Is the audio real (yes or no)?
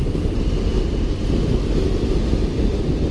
yes